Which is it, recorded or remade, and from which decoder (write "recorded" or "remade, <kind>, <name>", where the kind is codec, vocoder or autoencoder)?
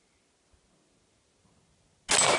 recorded